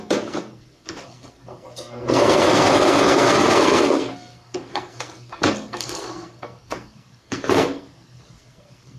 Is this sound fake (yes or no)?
yes